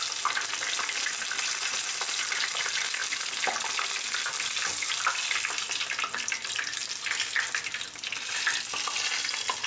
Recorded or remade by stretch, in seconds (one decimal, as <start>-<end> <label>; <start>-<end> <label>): 0.0-9.7 recorded